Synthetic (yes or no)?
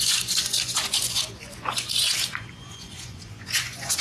yes